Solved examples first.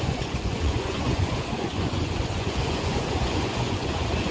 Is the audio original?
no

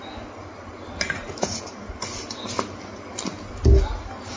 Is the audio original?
yes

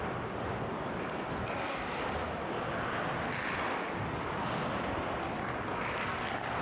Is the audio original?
yes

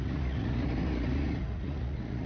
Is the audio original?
no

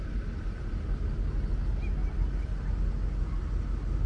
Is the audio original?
yes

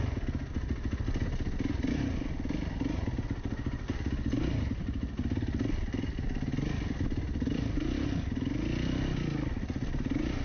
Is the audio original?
yes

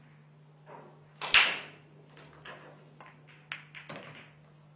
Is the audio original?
yes